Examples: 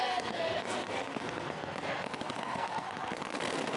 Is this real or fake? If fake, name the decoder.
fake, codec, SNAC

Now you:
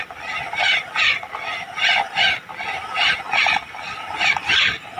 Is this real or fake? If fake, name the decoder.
real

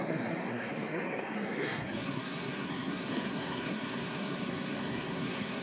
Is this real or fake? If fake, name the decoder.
fake, codec, SNAC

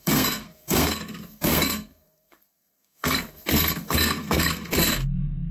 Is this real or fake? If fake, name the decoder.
fake, codec, SNAC